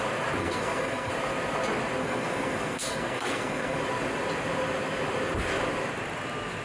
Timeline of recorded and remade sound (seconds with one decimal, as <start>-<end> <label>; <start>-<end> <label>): 0.0-0.4 recorded; 0.4-1.1 remade; 1.1-2.0 recorded; 2.0-3.8 remade; 3.8-6.6 recorded